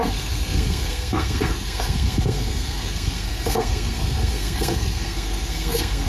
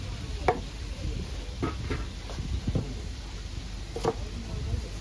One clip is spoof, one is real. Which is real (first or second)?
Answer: second